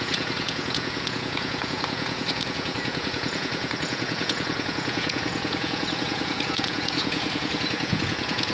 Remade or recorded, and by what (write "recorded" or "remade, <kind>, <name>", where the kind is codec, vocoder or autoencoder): remade, vocoder, Vocos